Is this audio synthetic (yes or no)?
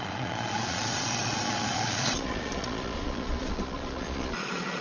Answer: yes